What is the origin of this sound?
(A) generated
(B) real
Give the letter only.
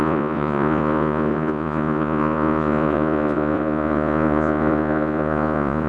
A